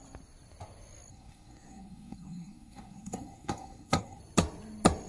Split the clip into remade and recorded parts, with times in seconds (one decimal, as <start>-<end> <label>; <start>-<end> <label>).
0.0-1.1 recorded; 1.1-4.2 remade; 4.2-5.1 recorded